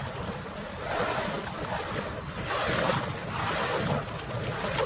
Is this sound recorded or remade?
recorded